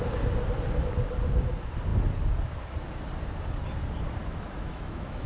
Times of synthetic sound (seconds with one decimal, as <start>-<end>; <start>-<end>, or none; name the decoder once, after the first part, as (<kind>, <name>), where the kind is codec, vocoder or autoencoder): 4.2-5.3 (autoencoder, DAC-VAE)